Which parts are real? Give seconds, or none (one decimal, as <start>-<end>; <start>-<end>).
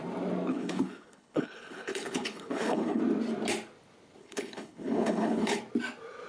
0.0-0.5; 3.0-4.2; 5.6-6.3